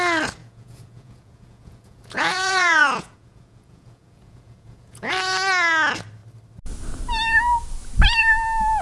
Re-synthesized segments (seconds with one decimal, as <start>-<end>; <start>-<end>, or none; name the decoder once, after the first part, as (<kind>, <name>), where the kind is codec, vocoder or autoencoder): 0.4-5.1 (vocoder, Vocos)